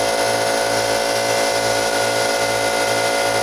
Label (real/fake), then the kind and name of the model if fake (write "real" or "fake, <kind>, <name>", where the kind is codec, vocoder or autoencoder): real